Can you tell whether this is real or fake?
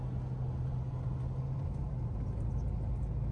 real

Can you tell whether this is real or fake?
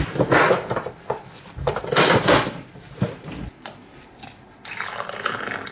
real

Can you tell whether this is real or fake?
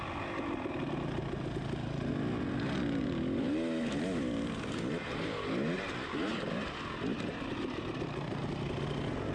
real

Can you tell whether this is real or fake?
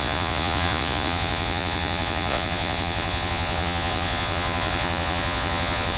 fake